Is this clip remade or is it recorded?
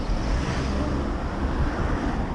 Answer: recorded